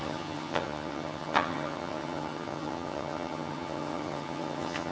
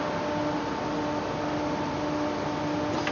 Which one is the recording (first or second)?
second